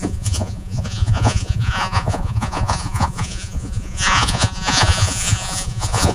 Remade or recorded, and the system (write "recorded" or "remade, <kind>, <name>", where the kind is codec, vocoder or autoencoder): remade, vocoder, Vocos